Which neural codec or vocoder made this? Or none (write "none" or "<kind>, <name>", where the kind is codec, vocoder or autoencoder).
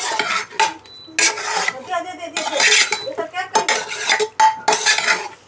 none